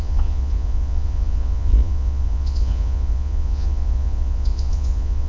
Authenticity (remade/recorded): remade